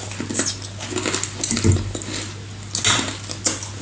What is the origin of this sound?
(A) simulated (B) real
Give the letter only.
B